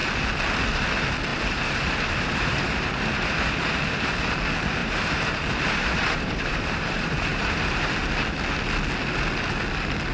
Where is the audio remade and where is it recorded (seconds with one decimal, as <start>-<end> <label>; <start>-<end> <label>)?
0.0-1.3 recorded; 1.3-3.3 remade; 3.3-4.8 recorded; 4.8-7.9 remade; 7.9-10.1 recorded